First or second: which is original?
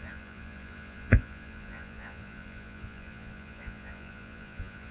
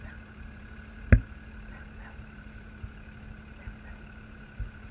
second